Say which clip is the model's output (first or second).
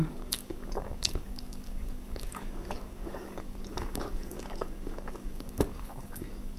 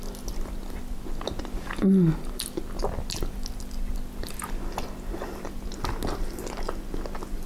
first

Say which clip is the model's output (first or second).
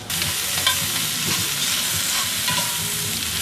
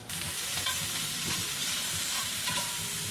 second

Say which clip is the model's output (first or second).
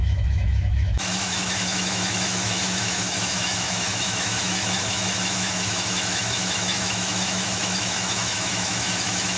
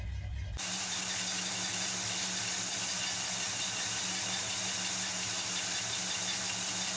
first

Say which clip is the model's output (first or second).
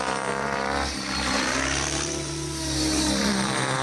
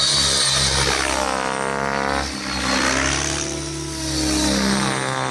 first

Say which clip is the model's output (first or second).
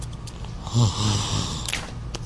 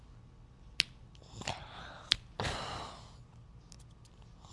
first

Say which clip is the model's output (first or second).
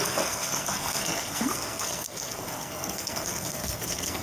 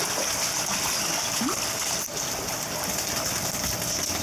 first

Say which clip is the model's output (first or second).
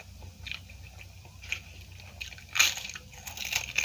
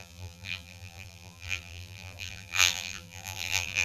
second